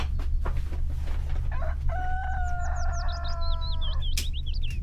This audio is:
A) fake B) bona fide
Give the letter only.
B